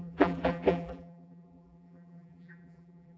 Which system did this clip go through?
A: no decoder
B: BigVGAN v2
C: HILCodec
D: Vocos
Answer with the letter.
B